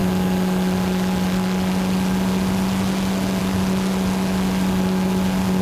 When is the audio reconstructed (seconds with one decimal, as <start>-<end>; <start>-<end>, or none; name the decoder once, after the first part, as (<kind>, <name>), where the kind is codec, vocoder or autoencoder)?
none